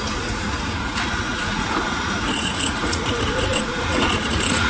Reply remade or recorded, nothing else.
remade